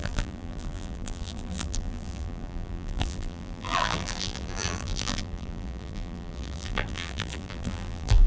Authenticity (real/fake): fake